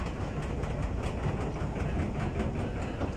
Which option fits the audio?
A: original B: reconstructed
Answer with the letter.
A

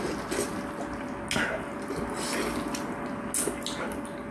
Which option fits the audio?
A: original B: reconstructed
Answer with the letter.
A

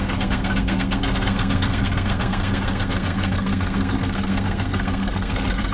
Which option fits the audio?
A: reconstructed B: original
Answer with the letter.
A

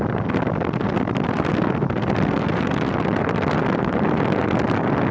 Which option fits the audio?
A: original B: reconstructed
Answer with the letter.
A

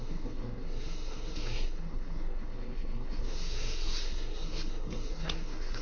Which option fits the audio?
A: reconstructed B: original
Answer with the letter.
A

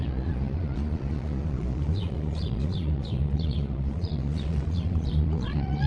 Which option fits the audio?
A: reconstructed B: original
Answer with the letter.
A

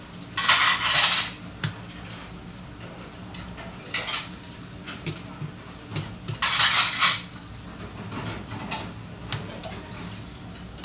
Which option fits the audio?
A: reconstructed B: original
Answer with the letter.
B